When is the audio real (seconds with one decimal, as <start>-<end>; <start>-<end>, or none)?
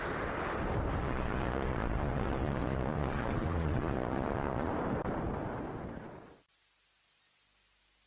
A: 0.0-1.0; 4.7-8.1